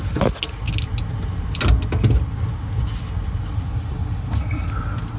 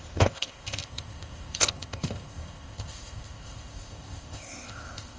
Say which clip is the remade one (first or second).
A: second